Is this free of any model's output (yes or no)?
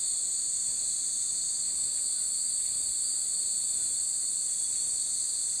yes